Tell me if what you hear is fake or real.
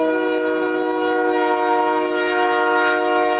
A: real